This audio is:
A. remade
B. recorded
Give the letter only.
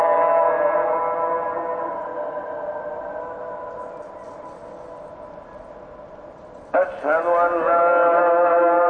B